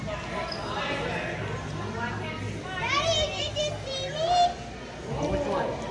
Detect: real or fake real